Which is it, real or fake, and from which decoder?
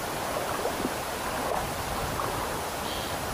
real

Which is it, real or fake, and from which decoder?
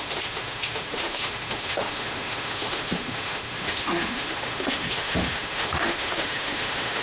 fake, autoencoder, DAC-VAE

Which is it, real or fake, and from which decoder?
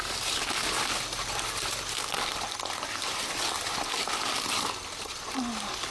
real